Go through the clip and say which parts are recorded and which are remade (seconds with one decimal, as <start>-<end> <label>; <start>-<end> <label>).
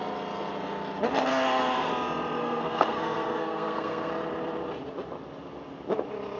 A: 0.0-1.3 recorded; 1.3-1.9 remade; 1.9-2.4 recorded; 2.4-4.1 remade; 4.1-6.4 recorded